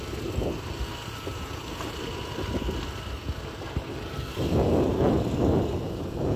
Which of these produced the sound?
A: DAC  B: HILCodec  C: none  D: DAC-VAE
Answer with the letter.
C